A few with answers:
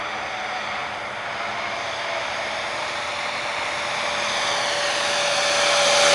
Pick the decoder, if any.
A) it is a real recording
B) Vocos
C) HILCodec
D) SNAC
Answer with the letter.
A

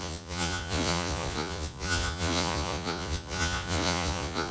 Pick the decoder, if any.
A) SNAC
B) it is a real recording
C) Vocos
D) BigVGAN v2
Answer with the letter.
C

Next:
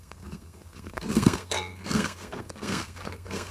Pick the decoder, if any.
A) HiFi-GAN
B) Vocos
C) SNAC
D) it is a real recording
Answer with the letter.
C